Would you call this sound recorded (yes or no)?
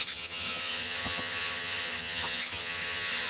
no